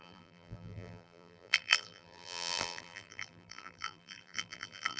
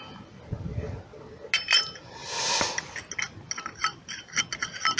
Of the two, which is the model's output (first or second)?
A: first